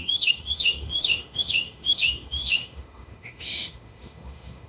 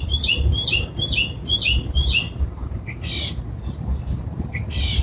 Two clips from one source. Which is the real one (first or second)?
second